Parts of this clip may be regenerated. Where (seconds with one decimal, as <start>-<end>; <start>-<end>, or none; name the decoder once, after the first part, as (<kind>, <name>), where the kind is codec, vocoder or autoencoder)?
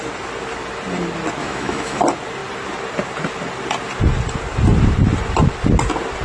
1.4-2.0 (autoencoder, DAC-VAE)